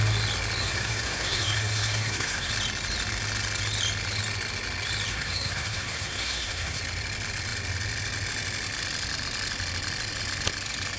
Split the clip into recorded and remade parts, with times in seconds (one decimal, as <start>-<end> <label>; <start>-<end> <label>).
0.0-0.6 recorded; 0.6-2.5 remade; 2.5-5.1 recorded; 5.1-6.8 remade; 6.8-11.0 recorded